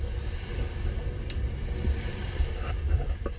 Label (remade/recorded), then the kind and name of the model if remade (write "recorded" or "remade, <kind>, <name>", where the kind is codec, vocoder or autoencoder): remade, vocoder, BigVGAN v2